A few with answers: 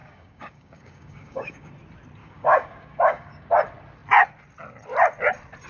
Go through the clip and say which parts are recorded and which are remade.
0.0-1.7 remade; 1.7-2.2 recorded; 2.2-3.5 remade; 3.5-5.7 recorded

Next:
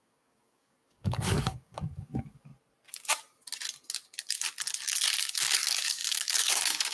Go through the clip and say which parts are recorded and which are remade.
0.0-2.5 remade; 2.5-5.2 recorded; 5.2-6.9 remade

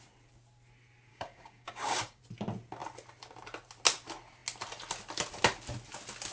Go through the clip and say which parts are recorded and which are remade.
0.0-1.1 recorded; 1.1-2.2 remade; 2.2-6.3 recorded

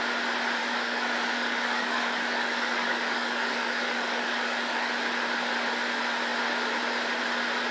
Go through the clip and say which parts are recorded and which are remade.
0.0-0.6 recorded; 0.6-4.9 remade; 4.9-7.7 recorded

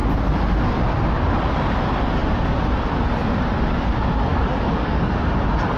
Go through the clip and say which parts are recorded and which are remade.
0.0-4.3 recorded; 4.3-5.1 remade; 5.1-5.8 recorded

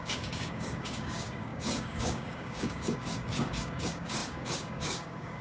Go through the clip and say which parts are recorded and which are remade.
0.0-5.4 remade